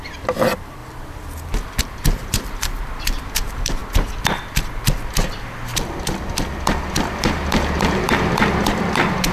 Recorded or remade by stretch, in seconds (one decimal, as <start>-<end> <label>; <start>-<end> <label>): 0.0-0.8 remade; 0.8-1.8 recorded; 1.8-3.8 remade; 3.8-7.2 recorded; 7.2-9.3 remade

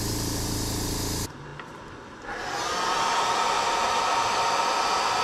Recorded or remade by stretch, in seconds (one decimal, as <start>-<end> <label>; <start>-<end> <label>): 0.0-5.2 recorded

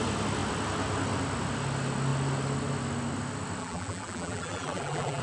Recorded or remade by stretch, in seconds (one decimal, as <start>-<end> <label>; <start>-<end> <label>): 0.0-3.6 recorded; 3.6-5.2 remade

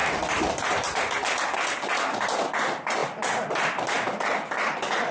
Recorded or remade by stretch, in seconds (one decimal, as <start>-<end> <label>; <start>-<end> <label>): 0.0-1.0 remade; 1.0-5.1 recorded

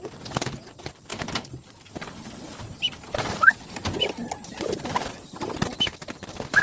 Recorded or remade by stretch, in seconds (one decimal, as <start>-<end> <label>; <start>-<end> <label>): 0.0-1.1 recorded; 1.1-5.1 remade; 5.1-6.6 recorded

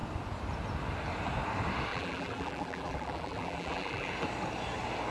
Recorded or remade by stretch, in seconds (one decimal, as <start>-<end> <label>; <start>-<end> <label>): 0.0-1.9 recorded; 1.9-4.1 remade; 4.1-5.1 recorded